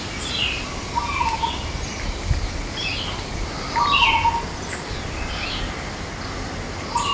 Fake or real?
real